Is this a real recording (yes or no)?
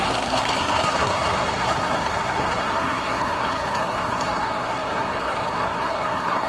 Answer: no